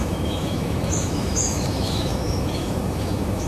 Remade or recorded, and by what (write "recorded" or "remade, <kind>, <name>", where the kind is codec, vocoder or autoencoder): remade, autoencoder, DAC-VAE